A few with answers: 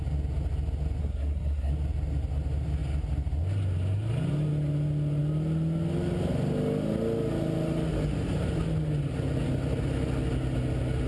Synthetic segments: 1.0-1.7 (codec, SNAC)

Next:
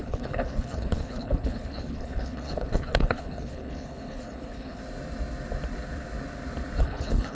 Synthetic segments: 0.0-4.8 (codec, HILCodec); 6.8-7.3

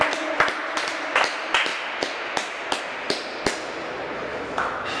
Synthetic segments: 4.3-5.0 (autoencoder, DAC-VAE)